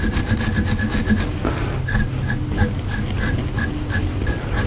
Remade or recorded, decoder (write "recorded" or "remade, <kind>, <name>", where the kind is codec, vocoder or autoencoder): recorded